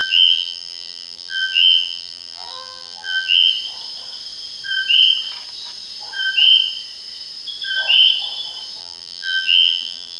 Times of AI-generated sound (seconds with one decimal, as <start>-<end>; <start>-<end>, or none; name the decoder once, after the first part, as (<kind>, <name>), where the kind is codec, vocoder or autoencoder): 0.0-3.5 (vocoder, BigVGAN v2); 8.8-10.2